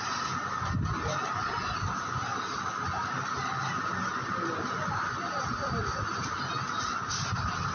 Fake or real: real